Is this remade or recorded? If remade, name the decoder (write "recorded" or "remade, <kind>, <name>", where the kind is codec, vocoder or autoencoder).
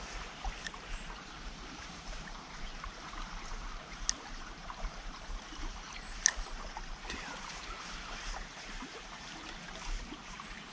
remade, vocoder, BigVGAN v2